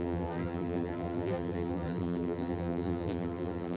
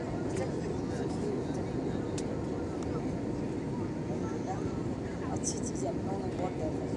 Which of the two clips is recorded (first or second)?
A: second